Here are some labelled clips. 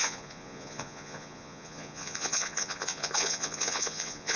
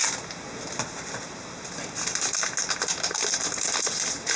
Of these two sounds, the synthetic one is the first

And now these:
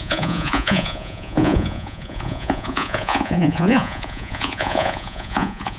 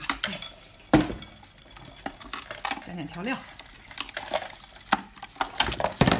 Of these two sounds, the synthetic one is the first